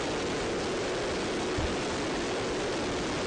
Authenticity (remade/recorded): recorded